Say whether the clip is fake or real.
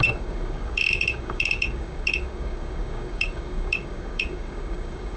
fake